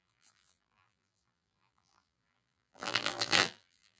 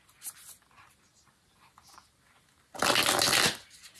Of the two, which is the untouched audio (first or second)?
second